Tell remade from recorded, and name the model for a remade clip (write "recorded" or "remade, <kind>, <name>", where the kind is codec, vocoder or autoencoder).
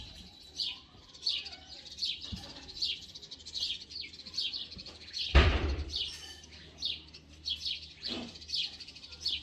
remade, vocoder, BigVGAN v2